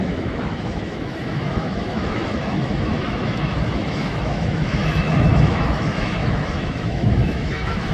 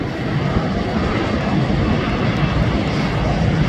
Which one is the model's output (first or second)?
first